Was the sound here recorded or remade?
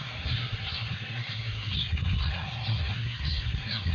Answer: remade